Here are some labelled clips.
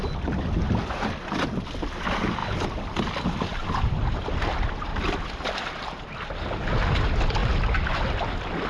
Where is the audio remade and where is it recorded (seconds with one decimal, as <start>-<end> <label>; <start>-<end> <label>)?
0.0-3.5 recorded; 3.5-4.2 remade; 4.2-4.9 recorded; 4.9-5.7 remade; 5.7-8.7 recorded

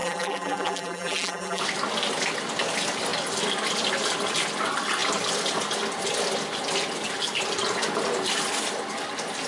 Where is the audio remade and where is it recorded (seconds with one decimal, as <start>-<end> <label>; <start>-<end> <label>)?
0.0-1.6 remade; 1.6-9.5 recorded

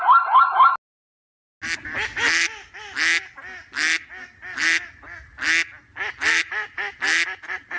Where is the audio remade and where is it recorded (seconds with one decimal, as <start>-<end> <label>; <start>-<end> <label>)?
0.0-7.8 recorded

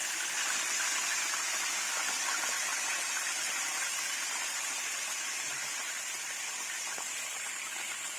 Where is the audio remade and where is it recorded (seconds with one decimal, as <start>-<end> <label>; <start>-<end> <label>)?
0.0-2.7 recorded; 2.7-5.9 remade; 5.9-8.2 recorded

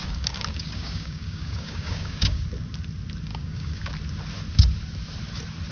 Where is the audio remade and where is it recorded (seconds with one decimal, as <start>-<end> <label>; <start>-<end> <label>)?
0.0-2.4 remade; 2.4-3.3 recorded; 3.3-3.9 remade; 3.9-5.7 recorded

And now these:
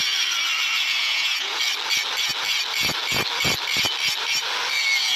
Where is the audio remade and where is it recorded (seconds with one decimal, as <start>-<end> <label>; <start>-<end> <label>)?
0.0-1.0 recorded; 1.0-1.6 remade; 1.6-5.2 recorded